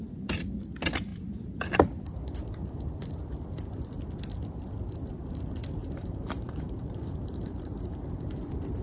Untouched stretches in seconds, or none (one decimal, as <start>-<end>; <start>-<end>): 0.0-5.8; 7.9-8.8